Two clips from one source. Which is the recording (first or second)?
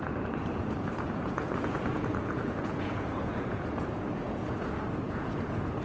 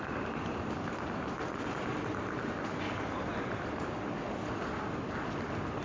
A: second